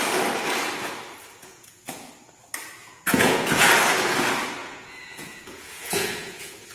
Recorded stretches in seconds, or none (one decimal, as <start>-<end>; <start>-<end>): 0.0-1.4; 2.1-2.8; 3.7-4.6